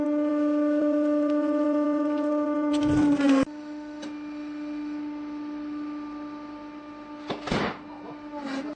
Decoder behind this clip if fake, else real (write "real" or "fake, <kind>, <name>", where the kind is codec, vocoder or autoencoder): real